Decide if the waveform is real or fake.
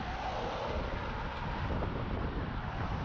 real